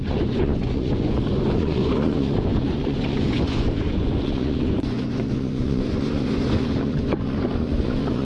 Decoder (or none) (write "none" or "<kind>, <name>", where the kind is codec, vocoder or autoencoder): vocoder, Vocos